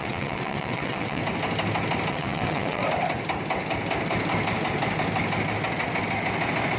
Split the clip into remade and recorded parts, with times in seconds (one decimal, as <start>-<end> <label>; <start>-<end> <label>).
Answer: 0.0-1.2 remade; 1.2-2.1 recorded; 2.1-2.8 remade; 2.8-6.8 recorded